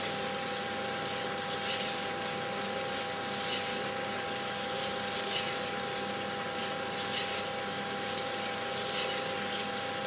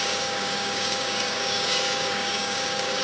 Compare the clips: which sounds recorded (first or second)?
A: first